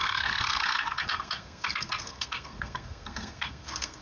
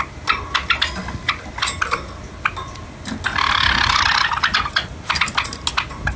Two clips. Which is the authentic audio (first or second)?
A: second